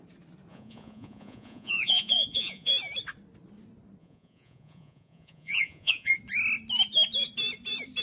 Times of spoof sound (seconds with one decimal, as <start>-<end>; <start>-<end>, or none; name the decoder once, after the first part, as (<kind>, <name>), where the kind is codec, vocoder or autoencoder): 0.5-2.7 (vocoder, Vocos); 4.0-6.1